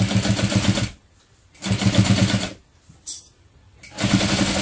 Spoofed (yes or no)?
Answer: no